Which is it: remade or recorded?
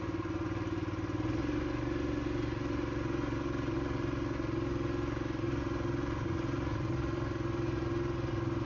recorded